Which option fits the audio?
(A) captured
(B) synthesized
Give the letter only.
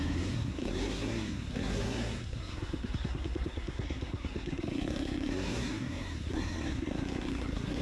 B